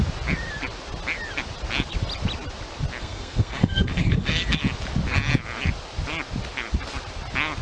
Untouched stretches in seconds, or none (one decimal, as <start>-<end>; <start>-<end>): 0.0-3.0; 4.6-7.6